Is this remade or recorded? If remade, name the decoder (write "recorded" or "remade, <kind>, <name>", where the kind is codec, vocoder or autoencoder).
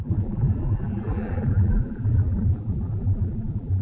remade, vocoder, BigVGAN v2